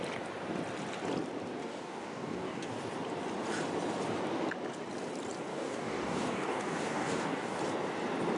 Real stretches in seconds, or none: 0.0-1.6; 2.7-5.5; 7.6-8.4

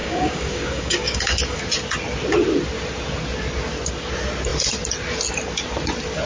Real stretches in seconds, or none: 1.6-6.3

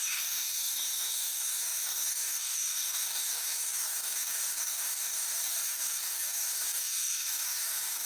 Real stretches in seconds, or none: none

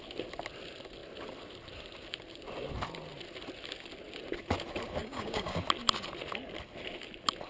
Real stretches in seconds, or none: 0.0-5.0; 5.6-7.5

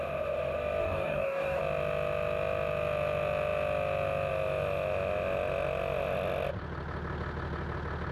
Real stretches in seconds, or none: 0.0-0.8; 1.6-8.1